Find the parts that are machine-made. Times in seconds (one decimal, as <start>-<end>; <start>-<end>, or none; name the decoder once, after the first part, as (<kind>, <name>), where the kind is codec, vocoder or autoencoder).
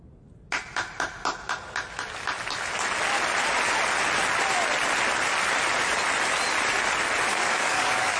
7.3-8.2 (codec, DAC)